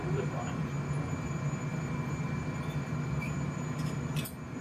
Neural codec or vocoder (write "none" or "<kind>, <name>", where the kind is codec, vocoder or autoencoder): none